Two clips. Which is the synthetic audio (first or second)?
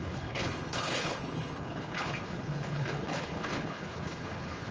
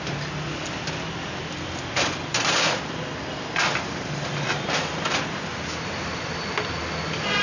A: first